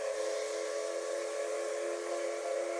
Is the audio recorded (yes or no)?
yes